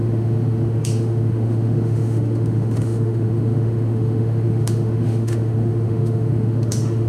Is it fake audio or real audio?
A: fake